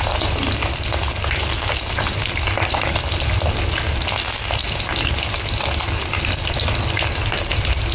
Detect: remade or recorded recorded